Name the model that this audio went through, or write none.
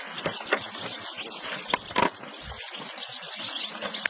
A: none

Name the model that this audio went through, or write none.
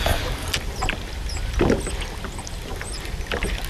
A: none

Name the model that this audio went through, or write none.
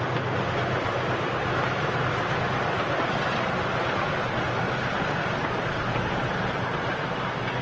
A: none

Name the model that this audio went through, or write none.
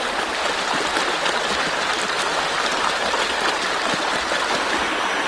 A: none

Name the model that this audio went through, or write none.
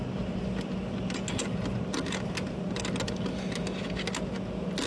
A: none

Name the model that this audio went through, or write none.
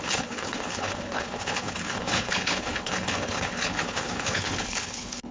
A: codec, HILCodec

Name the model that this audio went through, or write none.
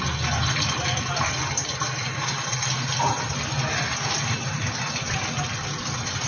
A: none